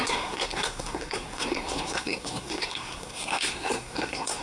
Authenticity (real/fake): fake